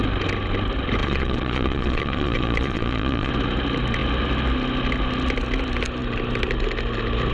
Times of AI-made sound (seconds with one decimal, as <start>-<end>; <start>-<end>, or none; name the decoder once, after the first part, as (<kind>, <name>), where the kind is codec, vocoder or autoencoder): 1.0-3.3 (vocoder, Vocos)